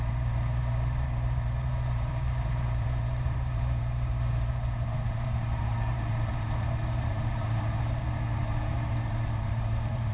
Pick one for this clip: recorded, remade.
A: remade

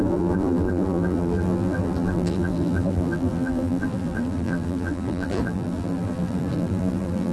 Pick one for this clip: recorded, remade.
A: remade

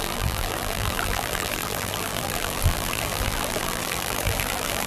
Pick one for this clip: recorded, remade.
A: remade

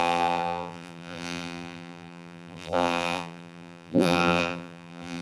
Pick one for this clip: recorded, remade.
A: remade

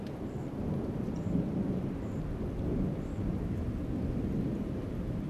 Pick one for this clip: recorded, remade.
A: remade